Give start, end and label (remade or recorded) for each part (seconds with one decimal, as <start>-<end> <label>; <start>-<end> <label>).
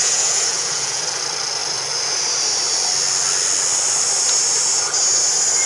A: 0.0-1.0 remade; 1.0-5.7 recorded